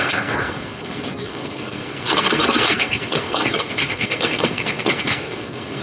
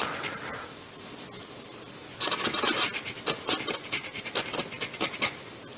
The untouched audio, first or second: second